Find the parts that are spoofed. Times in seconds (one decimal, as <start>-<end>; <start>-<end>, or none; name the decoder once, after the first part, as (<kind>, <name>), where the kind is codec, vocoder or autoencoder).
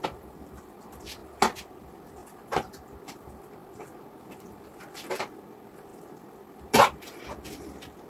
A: 0.0-1.2 (vocoder, BigVGAN v2); 1.8-8.1